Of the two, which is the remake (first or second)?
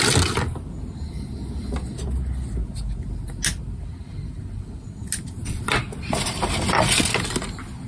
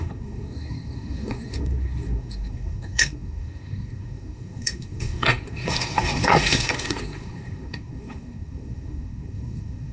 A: second